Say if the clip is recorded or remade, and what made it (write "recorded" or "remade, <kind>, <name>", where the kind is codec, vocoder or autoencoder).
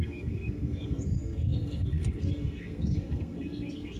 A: remade, codec, SNAC